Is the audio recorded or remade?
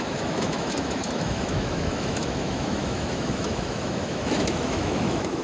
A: remade